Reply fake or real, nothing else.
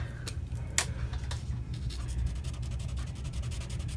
real